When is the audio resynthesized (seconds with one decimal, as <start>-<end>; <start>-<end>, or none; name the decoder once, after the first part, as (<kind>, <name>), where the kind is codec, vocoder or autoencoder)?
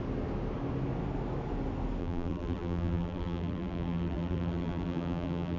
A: 2.0-5.6 (vocoder, BigVGAN v2)